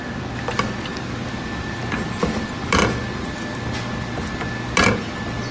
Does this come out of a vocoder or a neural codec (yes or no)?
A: no